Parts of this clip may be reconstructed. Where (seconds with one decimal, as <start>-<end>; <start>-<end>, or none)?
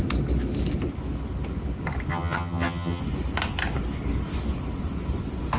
2.1-3.0